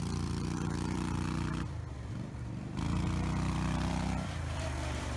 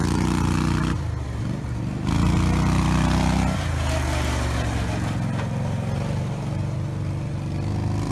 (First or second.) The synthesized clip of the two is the first